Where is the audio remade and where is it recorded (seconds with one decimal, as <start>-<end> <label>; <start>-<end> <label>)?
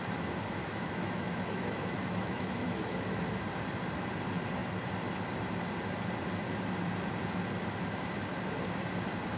0.0-0.6 recorded; 0.6-3.2 remade; 3.2-9.4 recorded